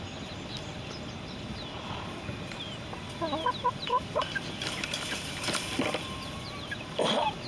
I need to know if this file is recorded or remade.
recorded